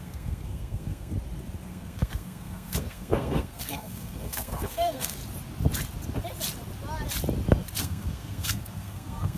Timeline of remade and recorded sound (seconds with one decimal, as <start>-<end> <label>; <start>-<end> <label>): 0.0-1.1 remade; 1.1-1.7 recorded; 1.7-5.2 remade; 5.2-7.8 recorded; 7.8-9.4 remade